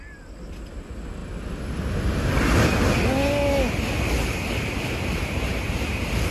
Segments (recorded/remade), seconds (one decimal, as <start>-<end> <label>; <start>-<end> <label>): 0.0-6.3 recorded